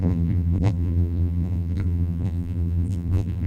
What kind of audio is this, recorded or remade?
remade